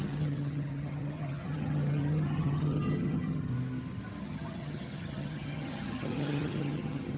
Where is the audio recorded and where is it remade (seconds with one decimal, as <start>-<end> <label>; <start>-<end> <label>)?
0.0-3.5 remade; 3.5-4.2 recorded; 4.2-7.2 remade